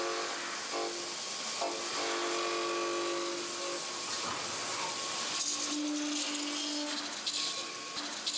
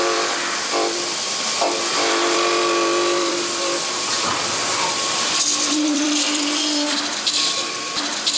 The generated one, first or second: second